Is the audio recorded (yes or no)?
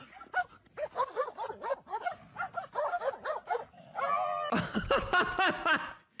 yes